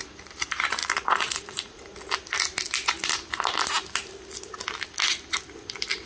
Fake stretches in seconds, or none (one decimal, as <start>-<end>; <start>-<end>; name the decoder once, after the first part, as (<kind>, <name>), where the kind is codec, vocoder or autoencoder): 0.8-1.8 (vocoder, Vocos)